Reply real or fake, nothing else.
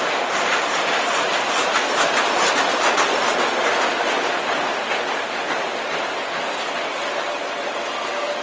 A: real